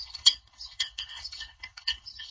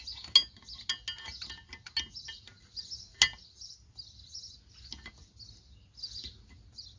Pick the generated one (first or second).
first